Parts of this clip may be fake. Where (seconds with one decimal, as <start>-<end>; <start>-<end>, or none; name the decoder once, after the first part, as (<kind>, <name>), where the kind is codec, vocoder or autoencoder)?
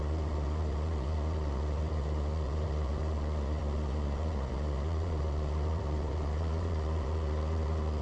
0.0-8.0 (vocoder, Vocos)